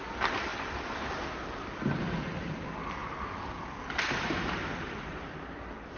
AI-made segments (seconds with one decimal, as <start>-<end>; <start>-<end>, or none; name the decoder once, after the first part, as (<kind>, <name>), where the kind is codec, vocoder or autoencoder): none